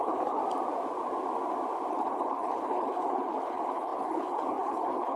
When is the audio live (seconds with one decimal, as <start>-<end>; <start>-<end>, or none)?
0.4-1.9